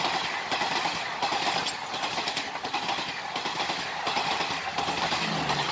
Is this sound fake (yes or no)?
no